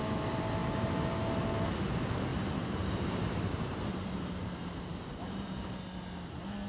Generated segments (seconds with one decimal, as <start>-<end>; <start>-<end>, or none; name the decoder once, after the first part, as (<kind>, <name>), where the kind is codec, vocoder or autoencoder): 2.3-5.8 (vocoder, BigVGAN v2)